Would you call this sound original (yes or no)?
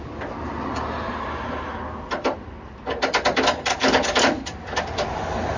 yes